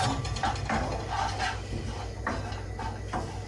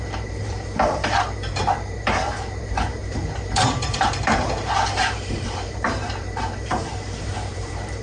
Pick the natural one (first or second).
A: first